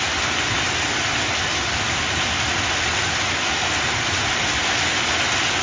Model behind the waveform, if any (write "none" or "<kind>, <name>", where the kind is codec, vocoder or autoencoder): none